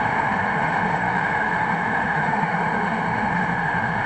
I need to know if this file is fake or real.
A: fake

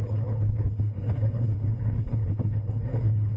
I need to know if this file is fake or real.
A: fake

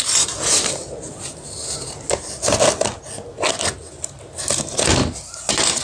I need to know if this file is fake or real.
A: real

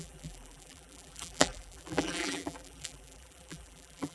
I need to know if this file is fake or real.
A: fake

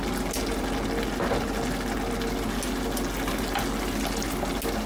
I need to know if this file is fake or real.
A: real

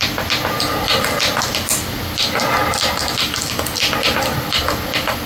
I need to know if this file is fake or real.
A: real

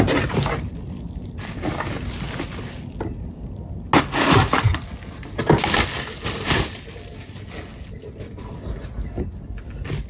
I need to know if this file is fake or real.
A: real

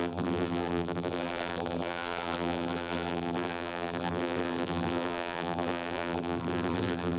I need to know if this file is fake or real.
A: fake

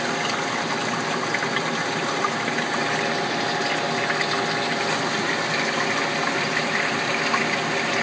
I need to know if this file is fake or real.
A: real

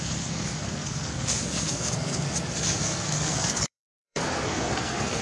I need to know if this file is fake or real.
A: fake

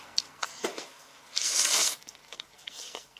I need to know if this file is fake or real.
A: fake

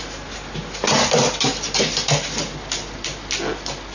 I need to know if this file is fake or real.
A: real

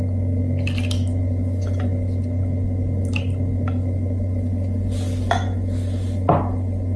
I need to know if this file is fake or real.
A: real